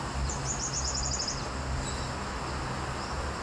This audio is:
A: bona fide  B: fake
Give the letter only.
A